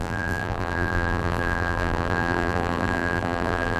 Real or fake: fake